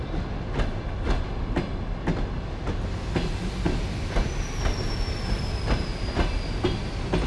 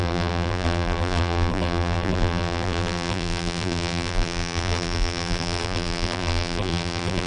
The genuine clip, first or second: first